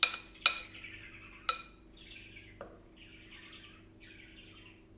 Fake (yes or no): no